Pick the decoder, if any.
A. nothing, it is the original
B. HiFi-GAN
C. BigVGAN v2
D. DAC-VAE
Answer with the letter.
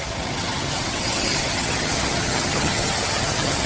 B